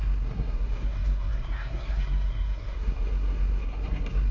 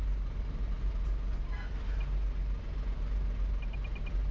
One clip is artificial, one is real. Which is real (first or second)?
second